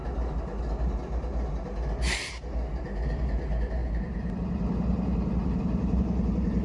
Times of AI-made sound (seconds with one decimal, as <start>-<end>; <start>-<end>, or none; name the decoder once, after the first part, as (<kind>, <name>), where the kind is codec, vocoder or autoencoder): none